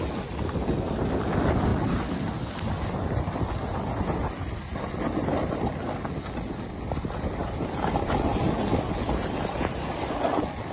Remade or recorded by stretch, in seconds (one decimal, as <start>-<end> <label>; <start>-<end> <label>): 0.0-7.4 recorded; 7.4-8.1 remade; 8.1-10.7 recorded